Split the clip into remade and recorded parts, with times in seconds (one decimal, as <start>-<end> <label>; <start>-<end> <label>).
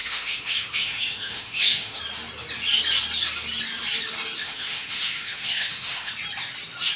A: 0.0-2.0 remade; 2.0-4.4 recorded; 4.4-6.1 remade; 6.1-7.0 recorded